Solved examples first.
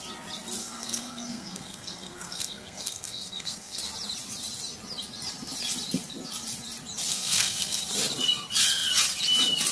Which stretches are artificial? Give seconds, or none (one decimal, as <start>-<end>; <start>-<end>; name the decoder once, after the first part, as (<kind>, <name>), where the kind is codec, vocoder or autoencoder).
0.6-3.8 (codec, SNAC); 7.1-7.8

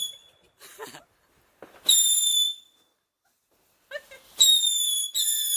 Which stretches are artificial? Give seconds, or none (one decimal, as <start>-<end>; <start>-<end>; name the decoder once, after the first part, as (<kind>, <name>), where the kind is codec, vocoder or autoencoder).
none

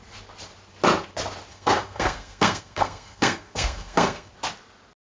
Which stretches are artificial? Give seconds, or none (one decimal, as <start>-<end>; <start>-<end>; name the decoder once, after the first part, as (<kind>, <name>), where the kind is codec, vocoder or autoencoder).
1.5-4.3 (codec, SNAC)

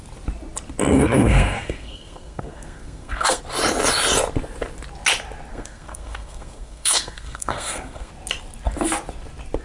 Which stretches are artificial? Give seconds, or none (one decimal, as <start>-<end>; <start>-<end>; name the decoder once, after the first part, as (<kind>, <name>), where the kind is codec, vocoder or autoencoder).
0.9-3.4 (codec, SNAC); 5.5-8.1